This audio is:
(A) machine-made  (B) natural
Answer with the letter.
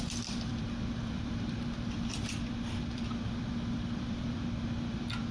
A